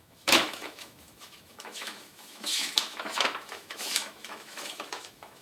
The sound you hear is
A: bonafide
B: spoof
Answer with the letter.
B